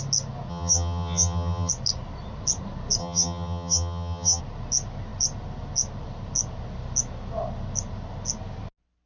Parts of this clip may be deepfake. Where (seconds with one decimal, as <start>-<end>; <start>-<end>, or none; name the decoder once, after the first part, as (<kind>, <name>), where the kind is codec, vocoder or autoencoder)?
0.5-1.7 (vocoder, HiFi-GAN); 3.0-4.4